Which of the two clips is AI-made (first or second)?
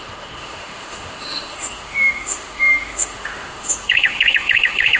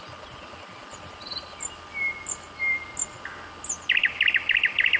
first